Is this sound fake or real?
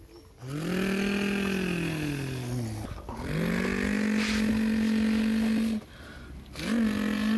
real